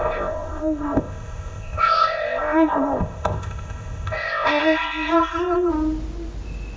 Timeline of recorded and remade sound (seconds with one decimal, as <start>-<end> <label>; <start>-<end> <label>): 0.0-5.7 remade; 5.7-6.8 recorded